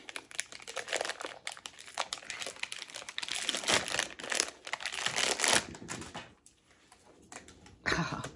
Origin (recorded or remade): recorded